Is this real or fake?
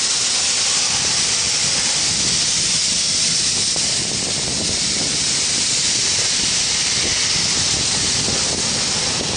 real